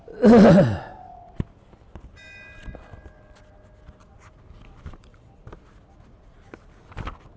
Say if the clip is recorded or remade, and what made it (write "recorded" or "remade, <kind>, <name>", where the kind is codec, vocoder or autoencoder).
recorded